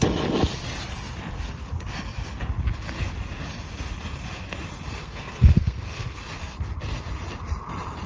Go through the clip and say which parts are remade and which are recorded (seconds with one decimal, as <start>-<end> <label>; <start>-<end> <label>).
0.0-5.0 recorded; 5.0-6.2 remade; 6.2-8.1 recorded